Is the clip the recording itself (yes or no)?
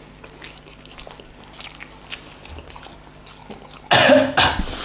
yes